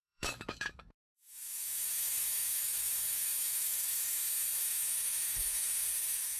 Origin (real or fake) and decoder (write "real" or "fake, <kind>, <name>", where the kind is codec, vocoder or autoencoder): fake, autoencoder, DAC-VAE